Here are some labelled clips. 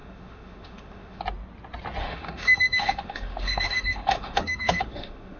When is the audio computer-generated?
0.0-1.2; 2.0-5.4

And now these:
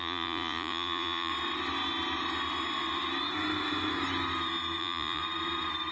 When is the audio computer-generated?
0.0-1.3; 4.8-5.2

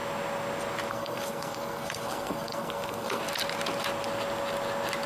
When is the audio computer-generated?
0.9-3.2

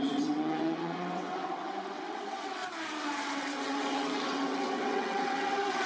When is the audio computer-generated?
0.0-2.6; 3.3-5.9

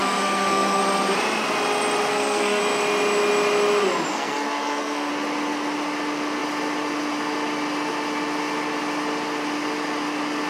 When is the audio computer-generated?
0.0-0.8; 2.1-2.6; 4.1-5.1

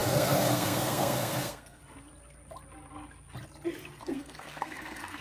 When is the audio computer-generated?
0.0-1.8; 4.0-5.2